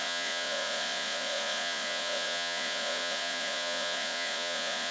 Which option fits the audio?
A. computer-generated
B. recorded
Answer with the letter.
A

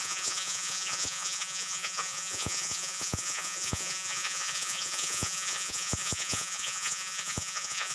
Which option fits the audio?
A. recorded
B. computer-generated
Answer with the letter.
B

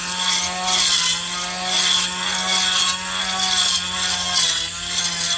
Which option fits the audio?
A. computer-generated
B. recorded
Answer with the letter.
B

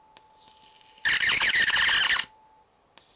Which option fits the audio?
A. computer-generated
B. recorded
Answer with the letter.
B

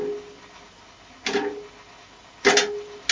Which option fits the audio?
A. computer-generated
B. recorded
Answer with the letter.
B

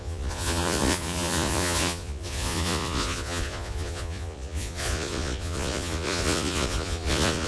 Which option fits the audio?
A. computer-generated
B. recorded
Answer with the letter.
A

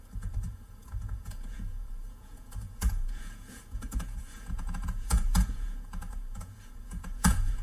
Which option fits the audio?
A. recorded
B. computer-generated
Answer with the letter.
B